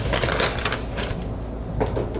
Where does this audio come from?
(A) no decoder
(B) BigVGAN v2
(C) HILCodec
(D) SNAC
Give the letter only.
A